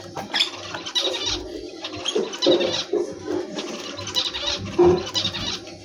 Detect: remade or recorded recorded